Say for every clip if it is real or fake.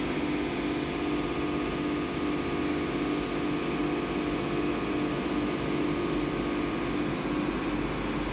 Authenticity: real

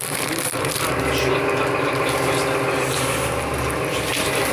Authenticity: real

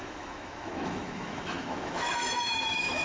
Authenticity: fake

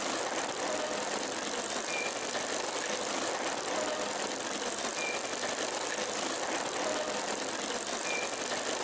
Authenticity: real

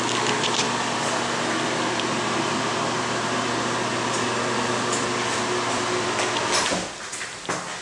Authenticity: real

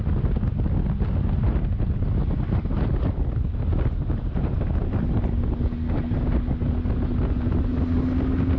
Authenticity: real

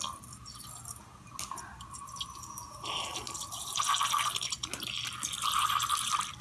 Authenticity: real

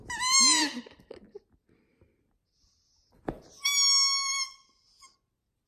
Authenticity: real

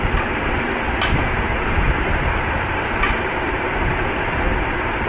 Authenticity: fake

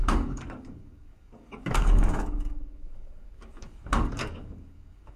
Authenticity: fake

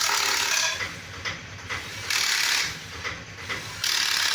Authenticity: real